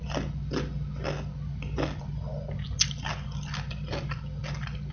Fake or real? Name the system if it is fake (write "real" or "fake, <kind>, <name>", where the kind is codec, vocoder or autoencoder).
real